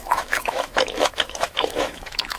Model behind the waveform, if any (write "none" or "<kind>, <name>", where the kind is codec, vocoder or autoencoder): autoencoder, DAC-VAE